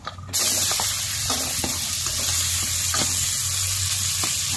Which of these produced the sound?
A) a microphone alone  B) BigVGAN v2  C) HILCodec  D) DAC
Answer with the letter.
A